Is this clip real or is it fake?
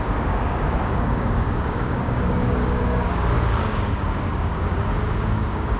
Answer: fake